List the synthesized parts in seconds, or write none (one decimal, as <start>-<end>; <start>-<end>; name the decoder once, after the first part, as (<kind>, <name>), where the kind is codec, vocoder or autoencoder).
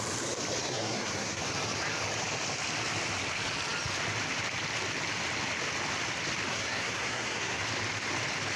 0.6-1.4 (codec, SNAC); 6.5-7.6